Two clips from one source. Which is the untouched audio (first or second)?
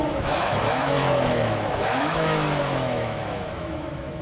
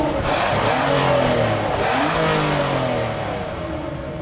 second